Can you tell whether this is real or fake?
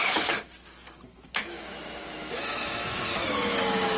fake